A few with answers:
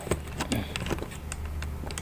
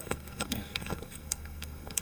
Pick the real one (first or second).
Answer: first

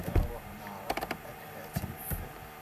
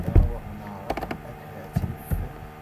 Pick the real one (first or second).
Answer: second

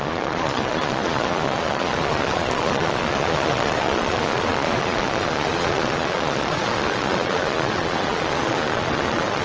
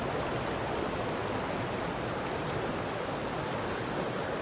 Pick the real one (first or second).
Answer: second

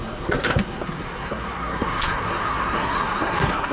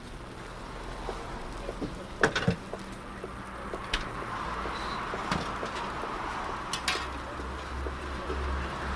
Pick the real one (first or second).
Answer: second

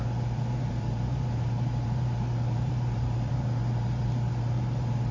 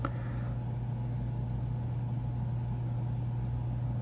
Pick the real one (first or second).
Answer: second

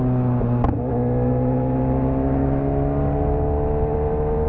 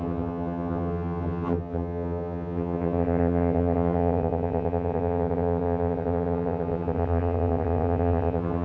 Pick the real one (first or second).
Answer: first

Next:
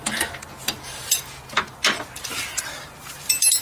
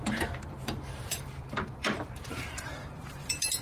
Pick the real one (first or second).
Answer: first